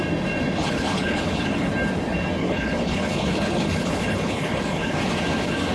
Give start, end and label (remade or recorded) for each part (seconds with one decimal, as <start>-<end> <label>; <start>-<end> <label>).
0.0-0.6 recorded; 0.6-1.7 remade; 1.7-2.4 recorded; 2.4-5.0 remade; 5.0-5.7 recorded